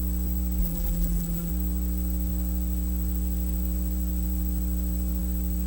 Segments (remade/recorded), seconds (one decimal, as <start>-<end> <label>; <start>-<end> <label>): 0.0-0.6 recorded; 0.6-1.5 remade; 1.5-5.7 recorded